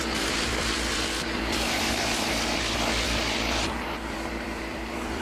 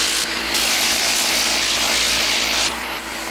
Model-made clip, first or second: first